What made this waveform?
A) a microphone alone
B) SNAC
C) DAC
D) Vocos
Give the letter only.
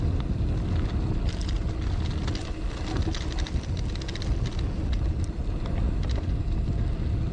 A